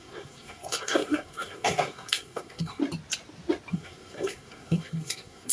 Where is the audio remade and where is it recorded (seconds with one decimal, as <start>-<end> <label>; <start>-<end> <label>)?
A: 0.0-2.8 remade; 2.8-3.7 recorded; 3.7-5.5 remade